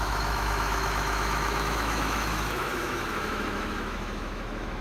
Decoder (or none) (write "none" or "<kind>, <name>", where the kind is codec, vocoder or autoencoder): autoencoder, DAC-VAE